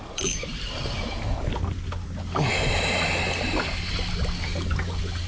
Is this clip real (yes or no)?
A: yes